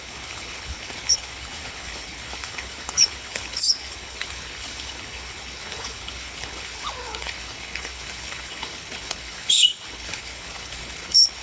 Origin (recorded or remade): remade